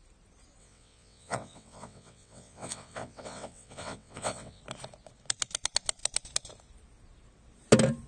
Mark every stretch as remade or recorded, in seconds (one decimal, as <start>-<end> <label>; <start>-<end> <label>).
0.0-0.6 recorded; 0.6-4.6 remade; 4.6-8.1 recorded